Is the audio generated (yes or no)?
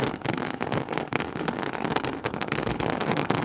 yes